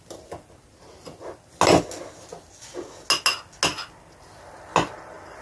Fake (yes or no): no